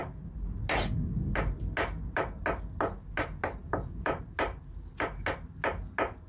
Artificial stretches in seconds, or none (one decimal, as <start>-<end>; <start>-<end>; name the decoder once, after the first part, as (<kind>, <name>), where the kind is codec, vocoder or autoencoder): 3.6-4.2 (vocoder, BigVGAN v2)